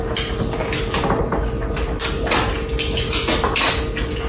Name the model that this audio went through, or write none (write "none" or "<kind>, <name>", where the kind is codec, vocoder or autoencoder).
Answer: none